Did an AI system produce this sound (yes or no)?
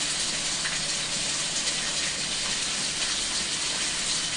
no